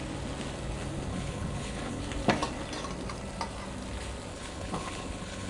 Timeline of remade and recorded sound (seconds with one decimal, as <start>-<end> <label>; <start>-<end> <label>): 0.0-1.1 recorded; 1.1-2.0 remade; 2.0-4.3 recorded; 4.3-5.5 remade